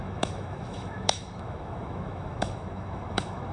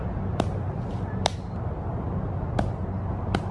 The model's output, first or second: first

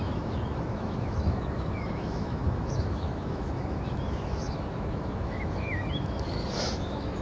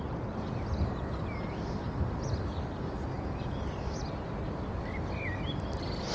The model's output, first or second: first